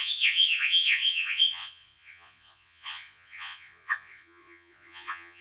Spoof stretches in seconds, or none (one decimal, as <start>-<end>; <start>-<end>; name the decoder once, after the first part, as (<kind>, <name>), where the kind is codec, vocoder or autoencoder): 0.0-5.4 (vocoder, Vocos)